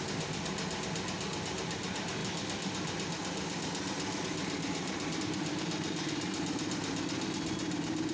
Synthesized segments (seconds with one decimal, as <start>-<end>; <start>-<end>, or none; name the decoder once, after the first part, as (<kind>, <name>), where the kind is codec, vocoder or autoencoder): none